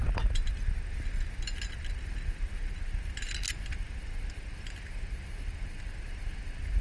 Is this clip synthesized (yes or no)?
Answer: no